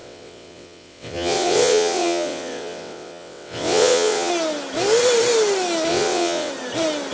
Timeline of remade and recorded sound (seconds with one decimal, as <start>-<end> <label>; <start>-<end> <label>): 0.0-4.3 remade; 4.3-5.9 recorded; 5.9-6.5 remade; 6.5-7.1 recorded